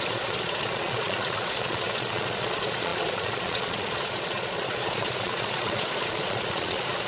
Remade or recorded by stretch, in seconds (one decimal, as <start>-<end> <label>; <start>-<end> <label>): 0.0-7.1 remade